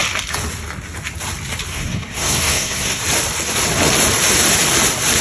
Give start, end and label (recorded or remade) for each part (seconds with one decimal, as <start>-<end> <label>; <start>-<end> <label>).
0.0-1.7 recorded; 1.7-3.0 remade; 3.0-5.2 recorded